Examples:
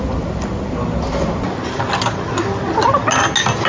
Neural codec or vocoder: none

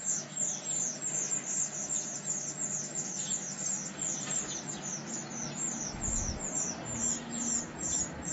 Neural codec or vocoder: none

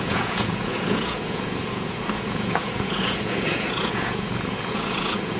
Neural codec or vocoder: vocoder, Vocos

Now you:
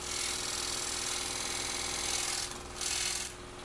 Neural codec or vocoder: none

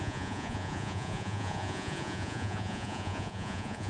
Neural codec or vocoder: vocoder, Vocos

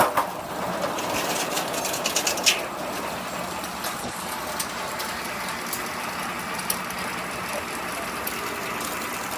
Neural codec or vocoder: none